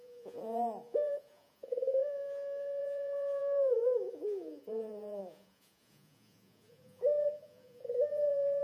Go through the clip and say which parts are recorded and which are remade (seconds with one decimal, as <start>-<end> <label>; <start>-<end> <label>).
0.0-8.6 remade